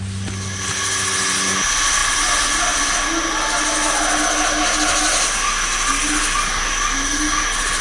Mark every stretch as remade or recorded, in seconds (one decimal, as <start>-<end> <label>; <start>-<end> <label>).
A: 0.0-2.0 recorded; 2.0-2.9 remade; 2.9-7.8 recorded